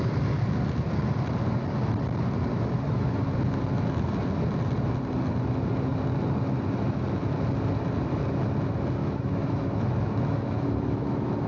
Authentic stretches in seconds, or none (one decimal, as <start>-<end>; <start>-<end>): 0.0-2.5; 3.2-9.0